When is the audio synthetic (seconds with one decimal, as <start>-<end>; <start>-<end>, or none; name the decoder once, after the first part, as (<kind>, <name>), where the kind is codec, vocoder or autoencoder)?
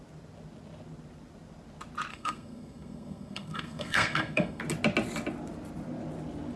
2.1-4.6 (codec, SNAC)